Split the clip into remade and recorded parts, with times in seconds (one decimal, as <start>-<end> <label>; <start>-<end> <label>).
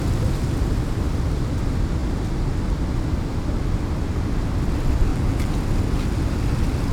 0.0-5.1 recorded; 5.1-5.6 remade; 5.6-6.9 recorded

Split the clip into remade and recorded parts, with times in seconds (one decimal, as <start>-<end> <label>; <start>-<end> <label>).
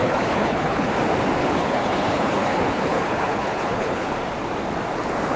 0.0-0.9 remade; 0.9-1.4 recorded; 1.4-4.1 remade; 4.1-5.4 recorded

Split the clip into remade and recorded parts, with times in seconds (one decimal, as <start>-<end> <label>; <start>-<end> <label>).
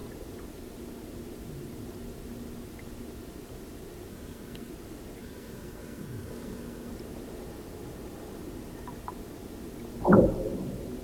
0.0-4.1 recorded; 4.1-4.7 remade; 4.7-5.2 recorded; 5.2-6.9 remade; 6.9-11.0 recorded